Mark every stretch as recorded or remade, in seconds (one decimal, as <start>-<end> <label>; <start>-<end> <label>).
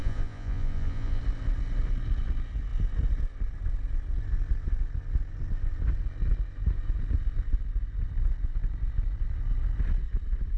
0.0-1.2 remade; 1.2-10.6 recorded